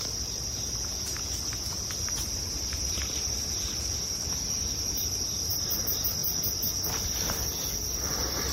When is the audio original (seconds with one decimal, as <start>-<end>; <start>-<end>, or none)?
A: 0.0-8.5